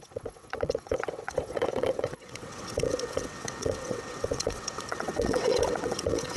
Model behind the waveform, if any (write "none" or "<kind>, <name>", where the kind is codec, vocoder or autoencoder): vocoder, WaveNeXt